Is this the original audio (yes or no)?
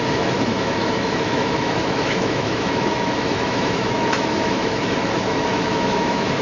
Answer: no